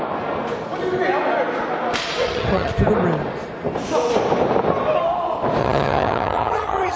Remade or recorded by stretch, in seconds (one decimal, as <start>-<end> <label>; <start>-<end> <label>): 0.0-2.2 recorded; 2.2-2.7 remade; 2.7-5.6 recorded; 5.6-7.0 remade